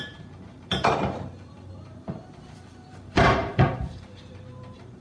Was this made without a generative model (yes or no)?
no